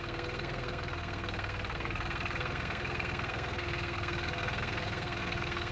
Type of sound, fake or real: fake